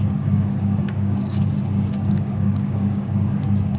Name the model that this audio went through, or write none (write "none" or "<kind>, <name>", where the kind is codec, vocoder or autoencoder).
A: codec, DAC